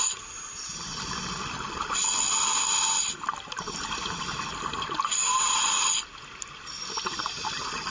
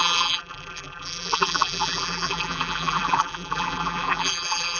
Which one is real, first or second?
first